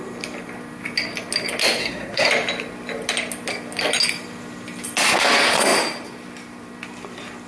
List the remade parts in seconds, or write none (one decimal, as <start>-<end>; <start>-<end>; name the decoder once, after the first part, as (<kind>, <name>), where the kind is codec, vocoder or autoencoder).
1.8-2.3 (codec, SNAC)